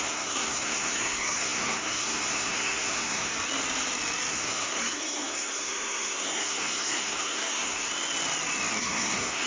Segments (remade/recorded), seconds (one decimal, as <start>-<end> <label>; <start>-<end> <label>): 0.0-3.3 remade; 3.3-4.3 recorded; 4.3-7.9 remade; 7.9-8.8 recorded; 8.8-9.5 remade